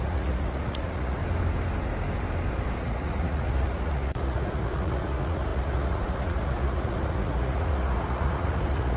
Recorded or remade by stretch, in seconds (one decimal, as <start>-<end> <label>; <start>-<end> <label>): 0.0-1.2 remade; 1.2-2.8 recorded; 2.8-9.0 remade